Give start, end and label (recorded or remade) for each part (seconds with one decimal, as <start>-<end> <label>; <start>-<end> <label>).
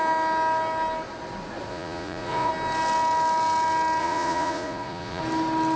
0.0-1.7 recorded; 1.7-2.5 remade; 2.5-4.0 recorded; 4.0-5.2 remade; 5.2-5.8 recorded